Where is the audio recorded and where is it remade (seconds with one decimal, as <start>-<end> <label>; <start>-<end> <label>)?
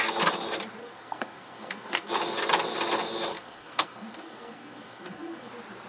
0.0-0.8 recorded; 0.8-2.1 remade; 2.1-3.3 recorded; 3.3-5.5 remade; 5.5-5.9 recorded